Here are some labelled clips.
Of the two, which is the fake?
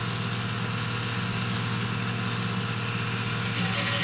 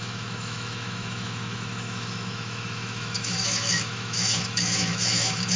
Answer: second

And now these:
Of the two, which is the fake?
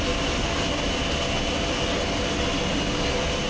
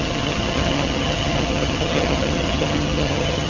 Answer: second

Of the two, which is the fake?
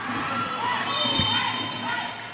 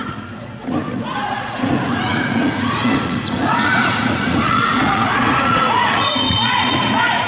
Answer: second